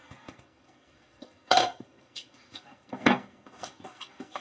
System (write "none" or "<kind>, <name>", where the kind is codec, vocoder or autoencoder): codec, SNAC